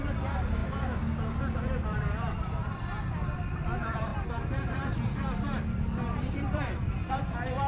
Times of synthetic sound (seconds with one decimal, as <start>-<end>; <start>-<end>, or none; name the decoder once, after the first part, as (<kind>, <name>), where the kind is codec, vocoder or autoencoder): 0.0-0.6 (vocoder, BigVGAN v2); 1.6-4.1; 6.3-7.7